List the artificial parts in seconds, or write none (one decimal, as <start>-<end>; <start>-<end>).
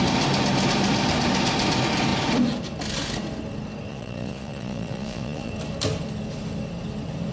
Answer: 3.9-5.5